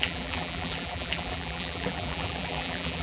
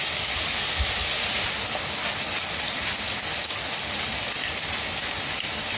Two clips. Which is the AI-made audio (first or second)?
first